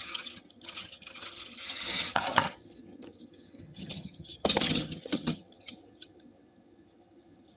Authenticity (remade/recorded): remade